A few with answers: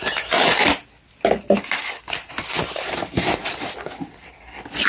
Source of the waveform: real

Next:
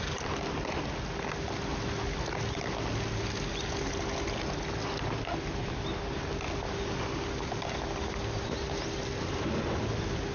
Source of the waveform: real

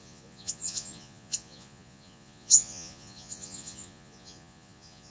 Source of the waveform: fake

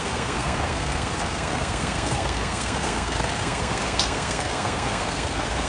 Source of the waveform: fake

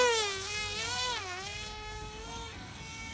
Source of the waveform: fake